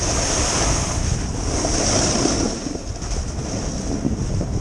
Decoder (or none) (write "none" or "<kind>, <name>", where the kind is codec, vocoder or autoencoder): none